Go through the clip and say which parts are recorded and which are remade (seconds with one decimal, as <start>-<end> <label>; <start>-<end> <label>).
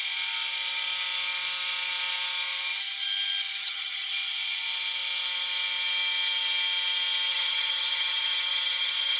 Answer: 0.0-3.6 recorded; 3.6-4.1 remade; 4.1-7.3 recorded; 7.3-9.2 remade